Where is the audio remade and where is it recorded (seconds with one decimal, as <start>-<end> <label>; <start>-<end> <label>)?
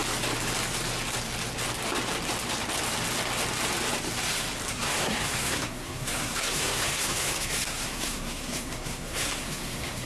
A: 0.0-4.7 recorded; 4.7-10.1 remade